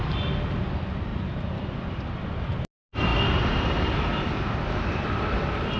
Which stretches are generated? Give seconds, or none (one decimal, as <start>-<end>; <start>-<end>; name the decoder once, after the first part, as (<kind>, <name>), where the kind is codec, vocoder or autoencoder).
1.1-2.3 (vocoder, BigVGAN v2)

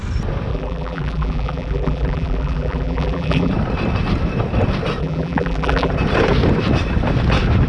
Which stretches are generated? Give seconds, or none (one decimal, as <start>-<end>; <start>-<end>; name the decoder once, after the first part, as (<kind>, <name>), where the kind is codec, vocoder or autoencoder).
0.5-3.5 (vocoder, BigVGAN v2); 5.0-5.9

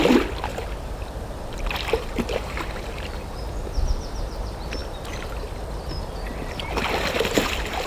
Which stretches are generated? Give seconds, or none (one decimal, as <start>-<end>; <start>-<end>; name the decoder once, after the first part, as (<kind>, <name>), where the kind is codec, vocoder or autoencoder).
0.5-3.5 (vocoder, BigVGAN v2)